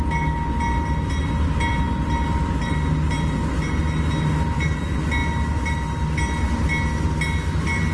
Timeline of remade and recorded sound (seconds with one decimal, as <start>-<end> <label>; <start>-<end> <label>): 0.0-7.9 recorded